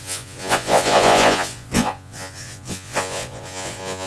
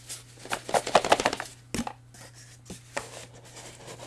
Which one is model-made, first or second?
first